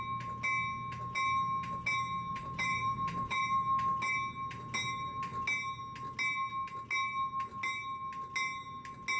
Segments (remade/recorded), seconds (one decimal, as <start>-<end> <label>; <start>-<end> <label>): 0.0-2.3 recorded; 2.3-3.4 remade; 3.4-9.2 recorded